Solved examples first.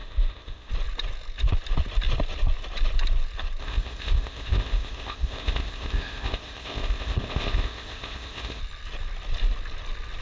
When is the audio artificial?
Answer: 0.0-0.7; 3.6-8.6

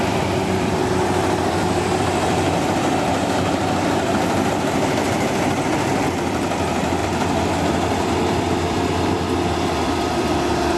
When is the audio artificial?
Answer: 0.0-10.8

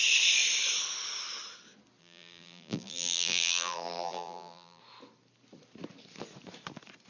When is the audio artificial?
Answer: 2.0-4.8

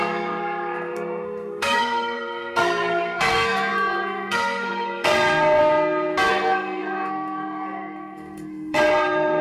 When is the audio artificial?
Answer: 0.0-5.6; 6.3-9.4

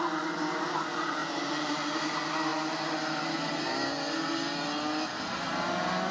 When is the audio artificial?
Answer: 1.2-1.9

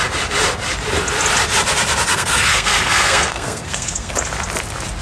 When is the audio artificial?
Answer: 2.1-4.1